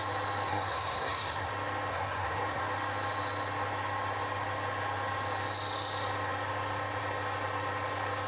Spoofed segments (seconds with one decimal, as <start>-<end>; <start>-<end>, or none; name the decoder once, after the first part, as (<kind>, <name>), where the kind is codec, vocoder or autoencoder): 0.5-1.5 (codec, SNAC); 1.9-2.6